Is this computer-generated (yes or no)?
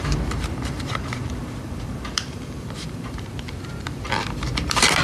yes